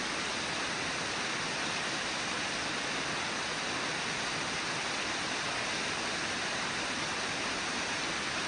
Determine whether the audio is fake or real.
real